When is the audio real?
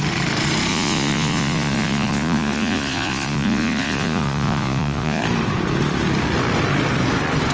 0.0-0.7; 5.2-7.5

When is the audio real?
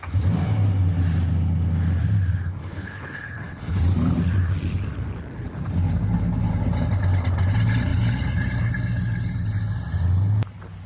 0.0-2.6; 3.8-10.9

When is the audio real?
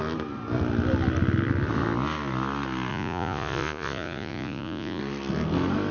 0.0-2.9; 5.0-5.9